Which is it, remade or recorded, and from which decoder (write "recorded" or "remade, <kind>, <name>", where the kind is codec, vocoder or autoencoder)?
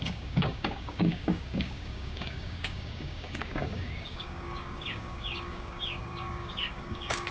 remade, codec, DAC